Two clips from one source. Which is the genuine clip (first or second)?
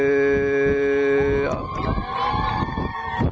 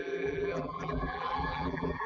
first